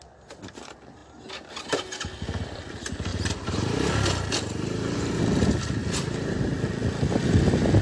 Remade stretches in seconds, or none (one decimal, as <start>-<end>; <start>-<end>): 3.1-5.2; 5.8-6.5